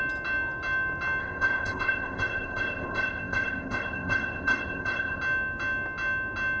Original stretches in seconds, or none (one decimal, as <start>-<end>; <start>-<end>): 0.0-1.2; 5.2-6.6